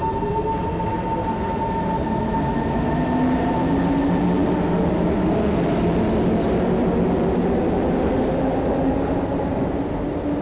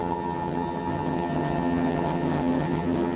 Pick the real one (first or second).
first